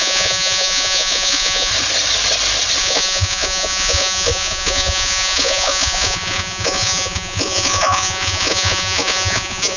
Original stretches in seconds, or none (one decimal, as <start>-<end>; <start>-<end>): 1.7-2.8